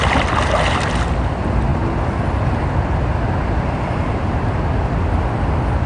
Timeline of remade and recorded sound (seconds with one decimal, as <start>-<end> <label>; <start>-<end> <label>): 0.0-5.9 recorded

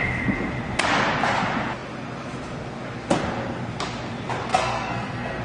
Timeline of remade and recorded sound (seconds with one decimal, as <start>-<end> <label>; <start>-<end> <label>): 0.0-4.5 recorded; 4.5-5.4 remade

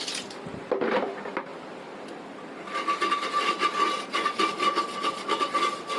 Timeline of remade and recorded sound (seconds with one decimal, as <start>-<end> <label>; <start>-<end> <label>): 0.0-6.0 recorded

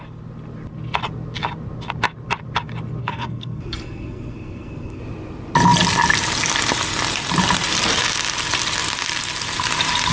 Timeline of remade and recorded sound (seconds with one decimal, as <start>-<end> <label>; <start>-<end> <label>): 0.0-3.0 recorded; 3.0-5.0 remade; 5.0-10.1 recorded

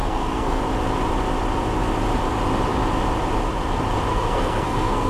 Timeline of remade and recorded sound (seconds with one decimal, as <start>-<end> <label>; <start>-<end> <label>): 0.0-0.6 remade; 0.6-4.1 recorded; 4.1-5.1 remade

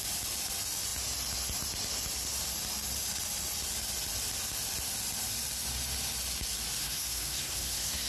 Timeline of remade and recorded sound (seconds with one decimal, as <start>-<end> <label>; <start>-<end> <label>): 0.0-6.8 recorded; 6.8-8.1 remade

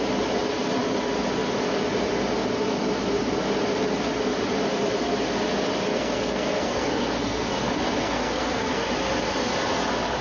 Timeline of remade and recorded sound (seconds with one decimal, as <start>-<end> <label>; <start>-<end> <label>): 0.0-5.9 recorded; 5.9-8.9 remade; 8.9-10.2 recorded